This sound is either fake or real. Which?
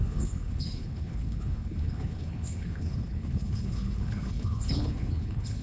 fake